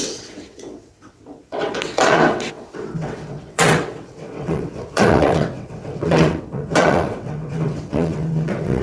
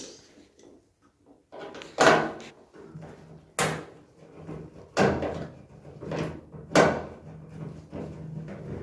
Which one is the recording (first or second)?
second